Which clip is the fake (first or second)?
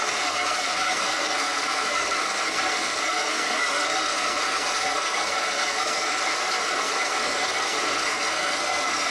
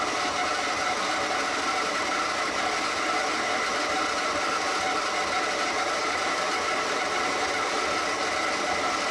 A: first